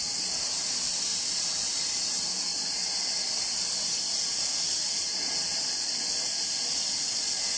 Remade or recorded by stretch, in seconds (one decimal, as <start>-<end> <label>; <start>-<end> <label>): 0.0-1.1 recorded; 1.1-1.9 remade; 1.9-2.5 recorded; 2.5-7.1 remade; 7.1-7.6 recorded